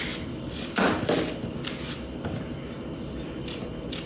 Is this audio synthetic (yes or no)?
no